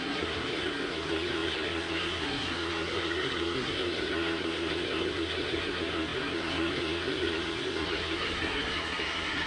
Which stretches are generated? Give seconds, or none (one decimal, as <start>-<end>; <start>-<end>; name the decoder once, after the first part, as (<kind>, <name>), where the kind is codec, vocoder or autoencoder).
0.0-9.5 (codec, SNAC)